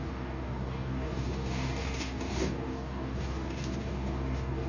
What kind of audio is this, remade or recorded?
remade